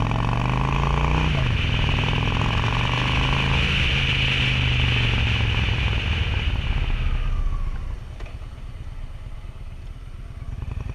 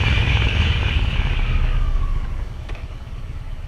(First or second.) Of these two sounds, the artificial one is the second